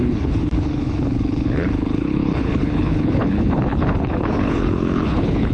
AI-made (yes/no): yes